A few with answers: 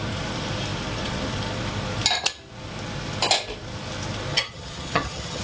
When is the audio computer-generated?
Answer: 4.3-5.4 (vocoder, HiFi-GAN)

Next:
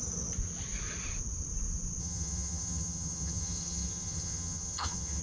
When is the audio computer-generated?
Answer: 2.0-5.2 (vocoder, HiFi-GAN)